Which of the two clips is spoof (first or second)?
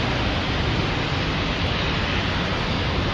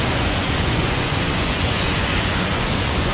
second